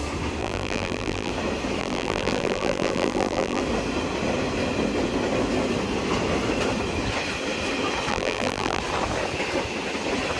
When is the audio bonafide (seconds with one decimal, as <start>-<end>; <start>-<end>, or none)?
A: 0.0-0.4; 1.3-1.8; 3.6-8.1; 8.8-10.4